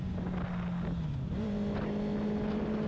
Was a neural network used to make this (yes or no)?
no